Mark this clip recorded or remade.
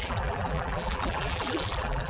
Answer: remade